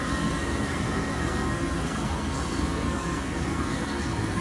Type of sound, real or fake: fake